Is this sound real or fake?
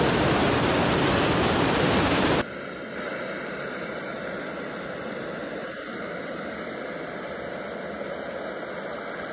real